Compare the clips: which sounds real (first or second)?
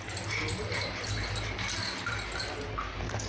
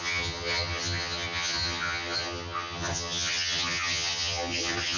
first